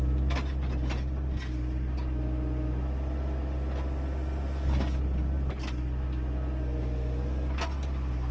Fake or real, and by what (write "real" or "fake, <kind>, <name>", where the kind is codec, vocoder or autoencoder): real